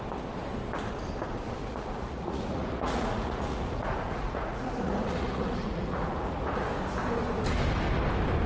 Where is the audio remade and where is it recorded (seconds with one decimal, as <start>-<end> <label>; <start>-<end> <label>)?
0.0-1.6 recorded; 1.6-6.7 remade; 6.7-8.5 recorded